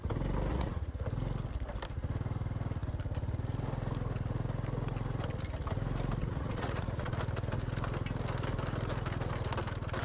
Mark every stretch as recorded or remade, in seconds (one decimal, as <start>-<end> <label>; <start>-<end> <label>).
0.0-0.5 recorded; 0.5-1.0 remade; 1.0-6.2 recorded; 6.2-7.1 remade; 7.1-10.0 recorded

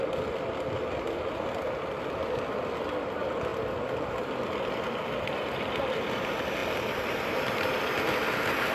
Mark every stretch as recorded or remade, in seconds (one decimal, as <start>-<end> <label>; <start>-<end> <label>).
0.0-3.5 recorded; 3.5-5.7 remade; 5.7-8.7 recorded

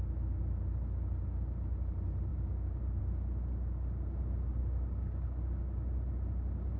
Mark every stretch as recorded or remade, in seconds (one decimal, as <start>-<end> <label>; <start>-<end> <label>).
0.0-2.3 recorded; 2.3-3.0 remade; 3.0-4.6 recorded; 4.6-5.6 remade; 5.6-6.8 recorded

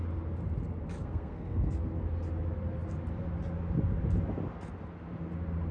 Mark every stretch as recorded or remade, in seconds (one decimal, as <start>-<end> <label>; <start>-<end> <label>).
0.0-1.0 recorded; 1.0-2.0 remade; 2.0-5.7 recorded

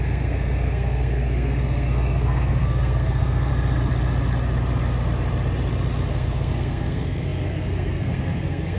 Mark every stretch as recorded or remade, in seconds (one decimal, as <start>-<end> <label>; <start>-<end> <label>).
0.0-3.5 remade; 3.5-6.1 recorded; 6.1-8.8 remade

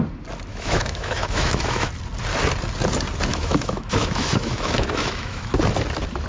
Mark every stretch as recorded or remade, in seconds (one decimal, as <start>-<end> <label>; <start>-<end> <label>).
0.0-0.5 recorded; 0.5-1.9 remade; 1.9-3.3 recorded; 3.3-5.5 remade; 5.5-6.3 recorded

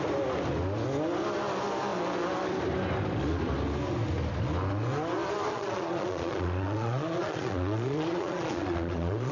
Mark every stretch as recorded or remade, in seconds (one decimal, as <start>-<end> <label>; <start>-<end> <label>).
0.0-5.5 recorded; 5.5-9.3 remade

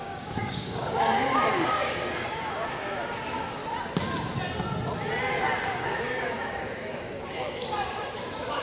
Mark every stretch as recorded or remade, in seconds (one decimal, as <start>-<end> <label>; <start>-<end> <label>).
0.0-3.6 remade; 3.6-5.7 recorded; 5.7-8.6 remade